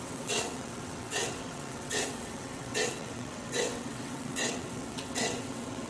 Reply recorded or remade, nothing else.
remade